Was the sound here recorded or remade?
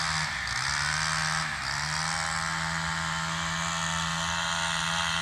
recorded